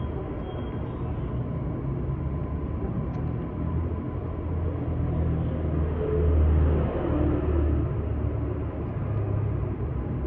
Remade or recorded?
recorded